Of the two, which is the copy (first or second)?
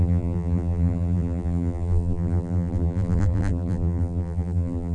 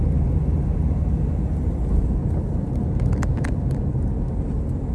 first